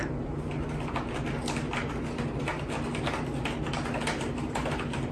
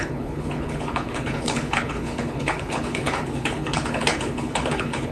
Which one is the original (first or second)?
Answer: first